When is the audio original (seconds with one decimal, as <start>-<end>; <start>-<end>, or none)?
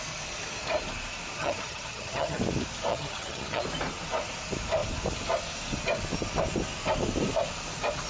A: 0.0-1.4; 2.4-2.9; 3.6-8.1